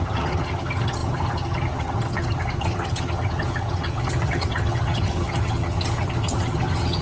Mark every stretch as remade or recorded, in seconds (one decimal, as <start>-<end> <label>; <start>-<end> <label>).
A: 0.0-7.0 remade